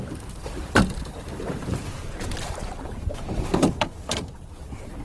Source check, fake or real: fake